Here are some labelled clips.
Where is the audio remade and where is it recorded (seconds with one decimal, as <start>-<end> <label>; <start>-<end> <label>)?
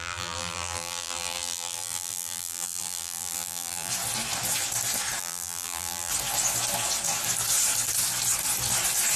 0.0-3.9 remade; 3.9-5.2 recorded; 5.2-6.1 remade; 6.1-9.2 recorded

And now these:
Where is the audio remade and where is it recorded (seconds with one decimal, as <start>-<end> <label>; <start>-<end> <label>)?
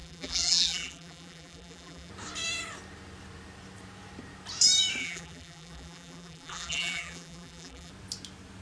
0.0-2.1 remade; 2.1-5.0 recorded; 5.0-7.9 remade; 7.9-8.6 recorded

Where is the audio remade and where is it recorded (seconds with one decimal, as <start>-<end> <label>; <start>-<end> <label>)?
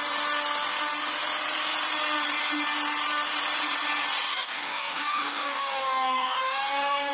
0.0-4.3 recorded; 4.3-7.1 remade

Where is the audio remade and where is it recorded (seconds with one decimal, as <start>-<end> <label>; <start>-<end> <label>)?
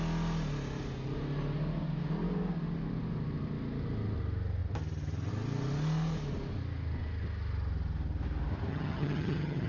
0.0-8.7 recorded; 8.7-9.7 remade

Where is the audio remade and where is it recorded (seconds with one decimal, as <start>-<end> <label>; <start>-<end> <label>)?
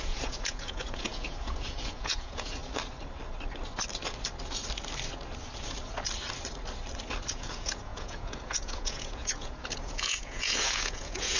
0.0-2.6 remade; 2.6-7.3 recorded; 7.3-11.4 remade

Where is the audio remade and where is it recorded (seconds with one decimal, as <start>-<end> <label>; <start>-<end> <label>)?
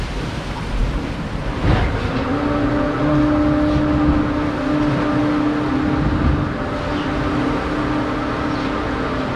0.0-9.4 recorded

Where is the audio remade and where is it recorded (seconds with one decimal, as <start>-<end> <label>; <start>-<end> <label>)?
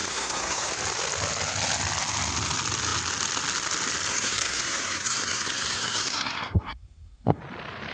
0.0-0.7 remade; 0.7-4.1 recorded; 4.1-7.4 remade; 7.4-7.9 recorded